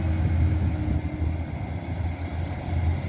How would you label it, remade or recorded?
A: recorded